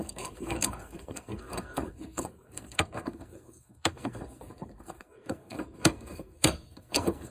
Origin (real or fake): fake